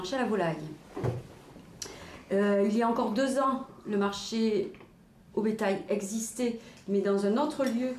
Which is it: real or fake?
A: real